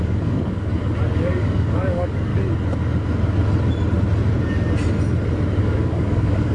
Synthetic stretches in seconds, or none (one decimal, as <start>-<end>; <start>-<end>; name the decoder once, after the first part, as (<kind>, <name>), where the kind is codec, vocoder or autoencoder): 0.0-0.7 (codec, DAC); 1.2-2.3; 5.6-6.5